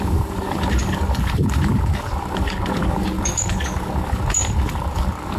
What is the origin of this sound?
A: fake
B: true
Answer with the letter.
A